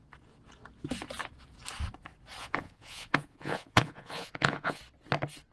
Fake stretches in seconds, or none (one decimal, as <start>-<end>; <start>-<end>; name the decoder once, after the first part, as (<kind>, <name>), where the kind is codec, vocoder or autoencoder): 2.4-4.8 (vocoder, Vocos)